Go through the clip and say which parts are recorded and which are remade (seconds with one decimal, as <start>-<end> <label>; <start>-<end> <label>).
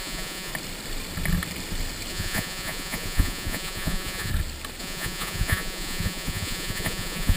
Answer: 0.0-0.5 remade; 0.5-2.1 recorded; 2.1-4.3 remade; 4.3-4.8 recorded; 4.8-7.4 remade